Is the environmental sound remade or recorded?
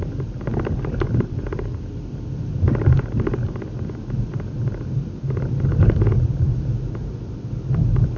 recorded